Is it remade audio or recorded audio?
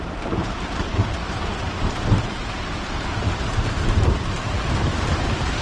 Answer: remade